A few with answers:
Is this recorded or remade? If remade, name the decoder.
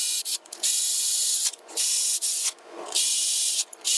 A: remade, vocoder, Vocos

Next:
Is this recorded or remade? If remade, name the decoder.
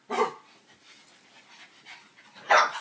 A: recorded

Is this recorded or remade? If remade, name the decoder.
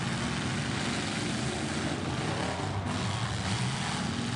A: recorded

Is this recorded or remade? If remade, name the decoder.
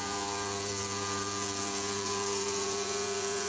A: remade, vocoder, Vocos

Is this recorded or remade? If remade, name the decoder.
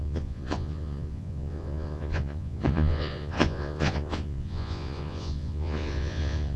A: remade, vocoder, Vocos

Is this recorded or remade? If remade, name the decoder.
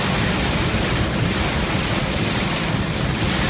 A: recorded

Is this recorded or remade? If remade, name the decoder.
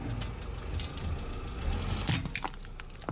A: recorded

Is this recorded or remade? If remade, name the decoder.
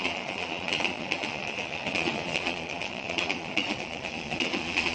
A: remade, vocoder, Vocos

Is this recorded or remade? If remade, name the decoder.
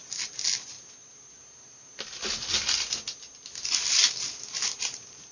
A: recorded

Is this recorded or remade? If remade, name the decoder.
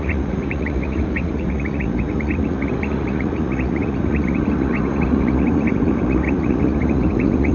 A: remade, vocoder, Vocos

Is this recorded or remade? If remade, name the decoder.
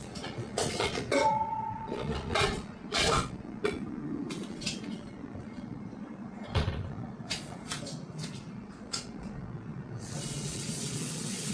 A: remade, vocoder, Vocos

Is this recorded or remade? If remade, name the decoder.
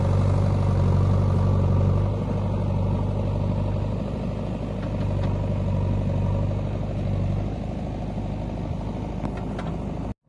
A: recorded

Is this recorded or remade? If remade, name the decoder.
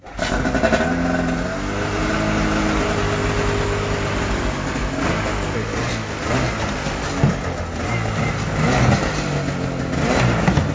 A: recorded